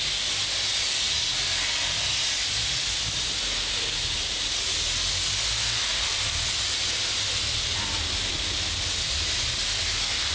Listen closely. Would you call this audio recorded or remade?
recorded